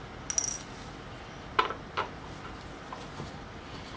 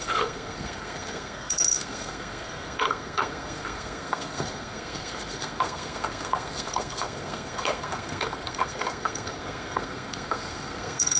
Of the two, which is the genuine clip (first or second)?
first